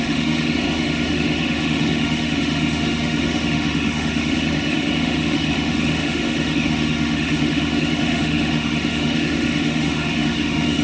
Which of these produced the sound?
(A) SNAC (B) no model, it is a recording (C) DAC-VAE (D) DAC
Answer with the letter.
C